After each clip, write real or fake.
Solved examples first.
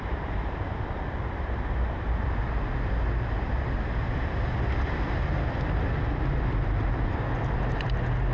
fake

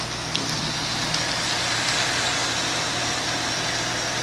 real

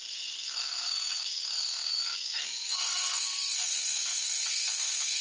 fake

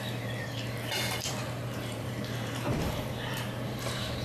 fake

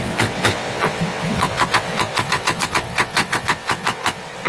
fake